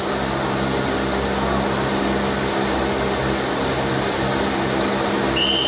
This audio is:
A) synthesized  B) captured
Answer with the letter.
B